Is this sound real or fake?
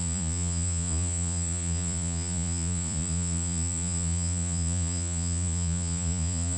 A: fake